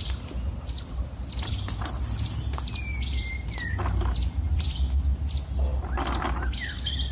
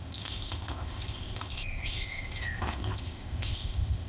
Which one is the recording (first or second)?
first